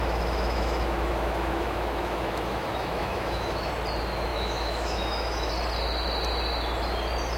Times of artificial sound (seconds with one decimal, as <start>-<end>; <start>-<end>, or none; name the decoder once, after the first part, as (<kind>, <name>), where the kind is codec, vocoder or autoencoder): 0.0-3.7 (autoencoder, DAC-VAE); 4.3-5.5